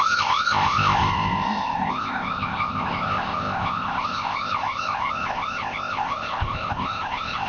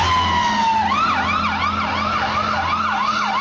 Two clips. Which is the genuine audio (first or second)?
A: second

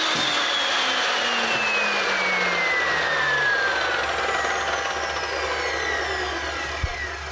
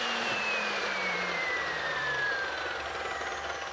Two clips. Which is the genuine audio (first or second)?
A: first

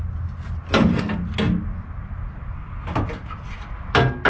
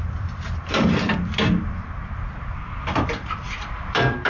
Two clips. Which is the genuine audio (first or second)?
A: first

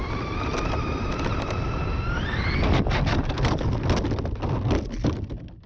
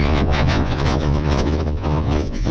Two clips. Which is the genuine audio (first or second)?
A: first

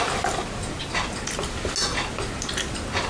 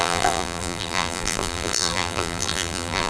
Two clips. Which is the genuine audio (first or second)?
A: first